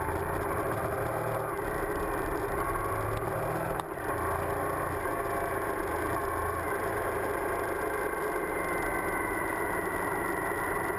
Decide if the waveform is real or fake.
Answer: real